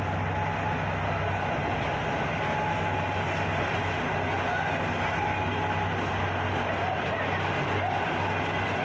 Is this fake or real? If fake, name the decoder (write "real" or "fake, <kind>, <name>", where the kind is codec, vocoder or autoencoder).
real